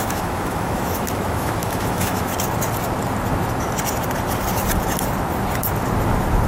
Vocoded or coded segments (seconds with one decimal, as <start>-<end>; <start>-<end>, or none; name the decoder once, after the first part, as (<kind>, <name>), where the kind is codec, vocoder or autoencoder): 0.0-2.3 (autoencoder, DAC-VAE)